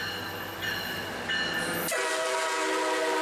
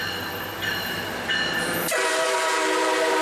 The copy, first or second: second